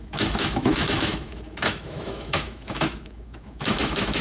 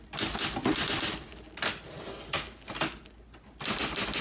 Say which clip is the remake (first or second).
first